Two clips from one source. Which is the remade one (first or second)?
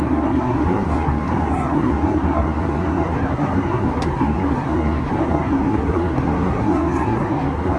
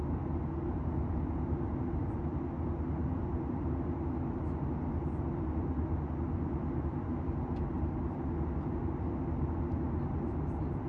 first